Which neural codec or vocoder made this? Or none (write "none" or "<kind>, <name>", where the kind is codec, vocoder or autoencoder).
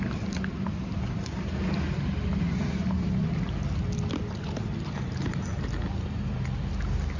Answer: none